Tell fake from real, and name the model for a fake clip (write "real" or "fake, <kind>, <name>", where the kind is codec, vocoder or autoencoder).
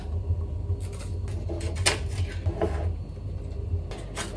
real